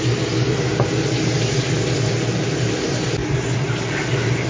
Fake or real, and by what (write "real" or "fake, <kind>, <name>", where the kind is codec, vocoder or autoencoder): real